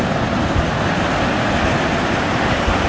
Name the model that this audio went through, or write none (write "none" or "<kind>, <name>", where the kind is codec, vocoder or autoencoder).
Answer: none